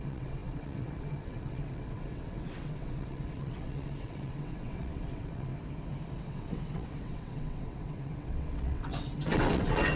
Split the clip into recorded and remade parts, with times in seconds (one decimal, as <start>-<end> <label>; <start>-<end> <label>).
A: 0.0-5.5 remade; 5.5-6.2 recorded; 6.2-10.0 remade